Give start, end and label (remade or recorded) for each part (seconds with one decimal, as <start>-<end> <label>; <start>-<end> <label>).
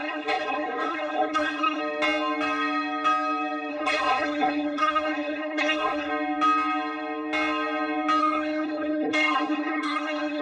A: 0.0-1.8 remade; 1.8-3.7 recorded; 3.7-6.1 remade; 6.1-8.2 recorded; 8.2-10.4 remade